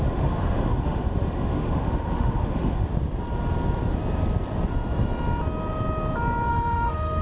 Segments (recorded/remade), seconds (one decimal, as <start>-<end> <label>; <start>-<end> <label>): 0.0-2.9 remade; 2.9-6.5 recorded; 6.5-7.2 remade